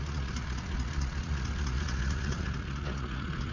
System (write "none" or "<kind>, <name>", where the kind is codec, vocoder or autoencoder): vocoder, Vocos